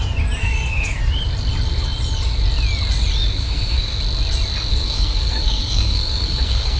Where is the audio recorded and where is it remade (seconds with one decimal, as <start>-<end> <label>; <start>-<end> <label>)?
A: 0.0-0.4 recorded; 0.4-1.0 remade; 1.0-3.3 recorded; 3.3-4.0 remade; 4.0-4.7 recorded; 4.7-6.8 remade